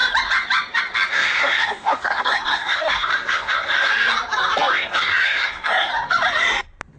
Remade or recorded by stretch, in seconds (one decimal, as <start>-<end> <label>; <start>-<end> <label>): 0.0-1.1 recorded; 1.1-3.9 remade; 3.9-4.7 recorded; 4.7-5.9 remade; 5.9-7.0 recorded